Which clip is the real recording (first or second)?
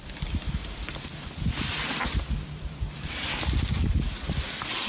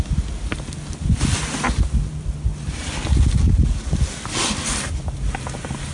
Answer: second